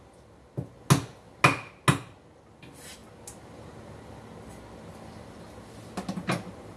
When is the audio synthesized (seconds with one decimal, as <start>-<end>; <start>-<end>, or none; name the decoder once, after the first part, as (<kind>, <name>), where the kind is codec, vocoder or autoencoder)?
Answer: none